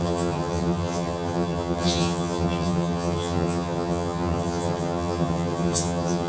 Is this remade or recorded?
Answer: remade